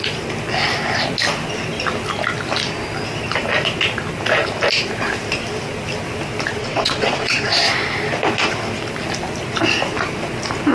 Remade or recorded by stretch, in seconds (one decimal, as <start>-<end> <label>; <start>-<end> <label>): 0.0-6.6 recorded; 6.6-7.5 remade; 7.5-10.7 recorded